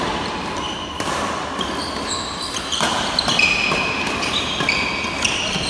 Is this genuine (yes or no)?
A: yes